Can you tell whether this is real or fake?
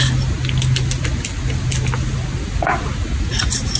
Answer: real